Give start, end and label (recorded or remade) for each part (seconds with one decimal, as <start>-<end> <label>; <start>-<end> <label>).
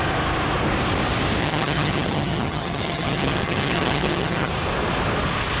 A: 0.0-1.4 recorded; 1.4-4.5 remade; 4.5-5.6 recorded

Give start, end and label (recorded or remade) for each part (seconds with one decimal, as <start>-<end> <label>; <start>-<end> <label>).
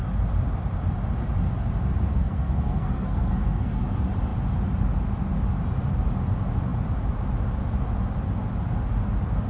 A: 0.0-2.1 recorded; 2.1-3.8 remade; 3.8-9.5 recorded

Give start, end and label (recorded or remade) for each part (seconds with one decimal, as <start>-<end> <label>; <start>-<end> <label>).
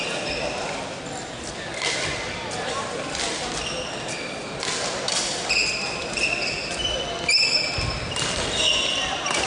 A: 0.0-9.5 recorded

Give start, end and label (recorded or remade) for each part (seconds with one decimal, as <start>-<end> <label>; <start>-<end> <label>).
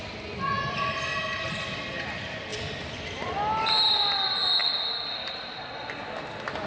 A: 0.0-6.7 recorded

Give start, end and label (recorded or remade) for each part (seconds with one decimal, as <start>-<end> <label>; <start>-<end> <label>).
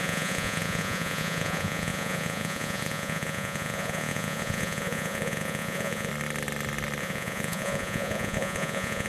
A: 0.0-6.1 remade; 6.1-7.0 recorded; 7.0-9.1 remade